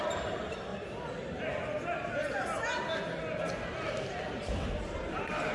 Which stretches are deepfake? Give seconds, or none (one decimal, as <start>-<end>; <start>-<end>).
0.0-0.7; 4.0-5.5